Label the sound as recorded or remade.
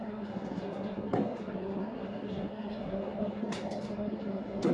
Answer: remade